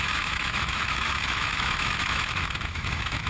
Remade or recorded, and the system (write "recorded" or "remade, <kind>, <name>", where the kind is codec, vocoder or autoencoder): remade, autoencoder, DAC-VAE